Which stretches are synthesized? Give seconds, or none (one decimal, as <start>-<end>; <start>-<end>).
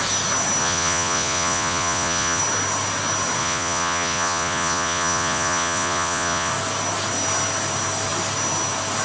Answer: 0.6-2.4; 3.4-6.5